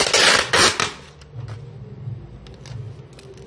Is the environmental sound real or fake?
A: real